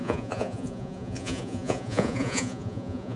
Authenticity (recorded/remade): remade